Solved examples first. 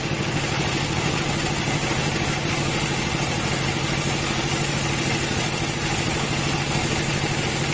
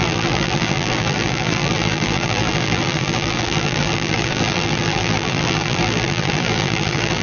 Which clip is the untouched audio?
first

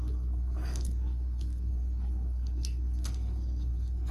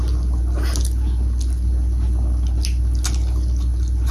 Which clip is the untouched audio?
second